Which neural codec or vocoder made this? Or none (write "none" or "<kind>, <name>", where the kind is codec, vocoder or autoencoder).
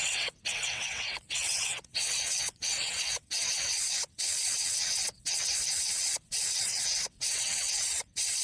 vocoder, WaveNeXt